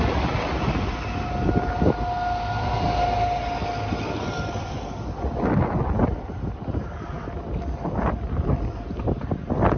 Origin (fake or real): real